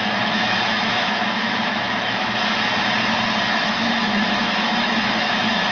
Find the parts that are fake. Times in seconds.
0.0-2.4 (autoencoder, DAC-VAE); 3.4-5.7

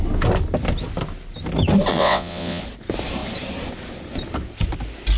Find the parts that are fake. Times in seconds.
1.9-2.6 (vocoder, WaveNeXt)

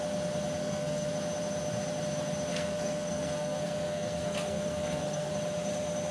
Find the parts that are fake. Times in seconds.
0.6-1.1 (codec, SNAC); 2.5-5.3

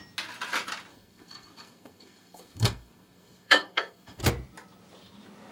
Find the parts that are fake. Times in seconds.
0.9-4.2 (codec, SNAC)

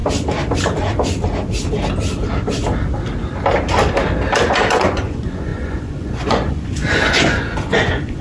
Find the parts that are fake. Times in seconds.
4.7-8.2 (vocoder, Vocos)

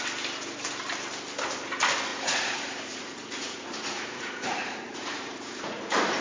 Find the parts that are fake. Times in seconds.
2.1-5.8 (vocoder, Vocos)